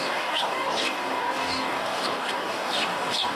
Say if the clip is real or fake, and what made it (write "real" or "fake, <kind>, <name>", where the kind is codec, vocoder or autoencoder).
fake, codec, DAC